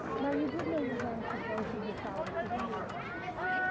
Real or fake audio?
real